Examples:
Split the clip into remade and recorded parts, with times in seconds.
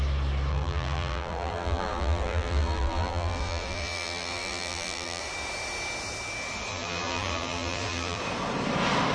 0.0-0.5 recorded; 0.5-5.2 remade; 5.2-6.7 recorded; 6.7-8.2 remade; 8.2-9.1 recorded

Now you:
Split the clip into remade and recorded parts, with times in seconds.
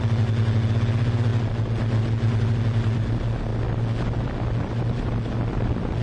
0.0-6.0 recorded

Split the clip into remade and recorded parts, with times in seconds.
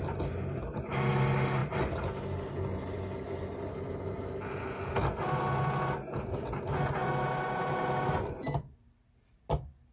0.0-9.9 recorded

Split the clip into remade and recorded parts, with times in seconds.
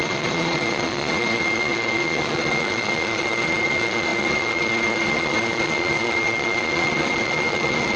0.0-8.0 remade